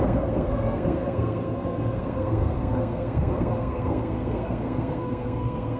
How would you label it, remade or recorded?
remade